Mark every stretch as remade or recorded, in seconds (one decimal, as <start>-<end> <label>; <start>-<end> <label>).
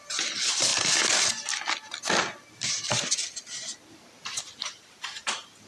0.0-5.7 recorded